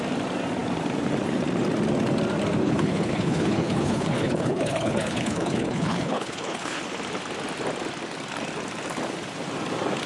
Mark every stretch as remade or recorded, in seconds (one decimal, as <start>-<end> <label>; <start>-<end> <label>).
0.0-2.6 recorded; 2.6-6.8 remade; 6.8-10.1 recorded